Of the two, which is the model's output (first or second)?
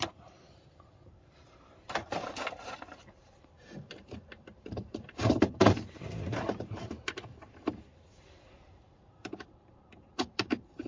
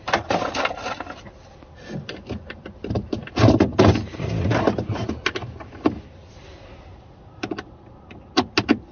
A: first